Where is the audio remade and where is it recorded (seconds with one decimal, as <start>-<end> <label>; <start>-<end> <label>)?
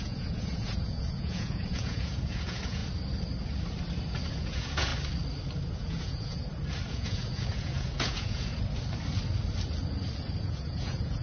0.0-2.8 remade; 2.8-4.3 recorded; 4.3-4.9 remade; 4.9-5.7 recorded; 5.7-6.4 remade; 6.4-6.9 recorded; 6.9-8.5 remade; 8.5-10.4 recorded; 10.4-11.2 remade